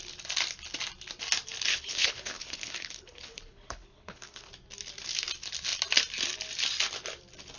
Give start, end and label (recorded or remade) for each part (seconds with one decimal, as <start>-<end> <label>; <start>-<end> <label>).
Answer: 0.0-1.7 recorded; 1.7-4.5 remade; 4.5-7.6 recorded

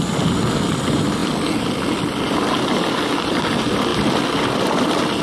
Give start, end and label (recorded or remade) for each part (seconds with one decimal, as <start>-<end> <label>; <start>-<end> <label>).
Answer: 0.0-5.2 recorded